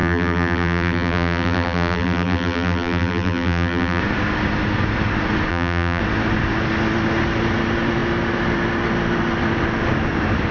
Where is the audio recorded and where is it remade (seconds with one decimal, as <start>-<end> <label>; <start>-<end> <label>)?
0.0-4.0 remade; 4.0-5.5 recorded; 5.5-6.0 remade; 6.0-10.5 recorded